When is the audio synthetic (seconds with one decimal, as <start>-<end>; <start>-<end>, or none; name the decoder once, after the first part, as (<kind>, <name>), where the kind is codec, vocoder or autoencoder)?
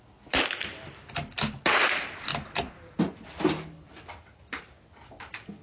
2.3-4.6 (vocoder, BigVGAN v2)